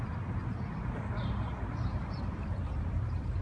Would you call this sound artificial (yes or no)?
yes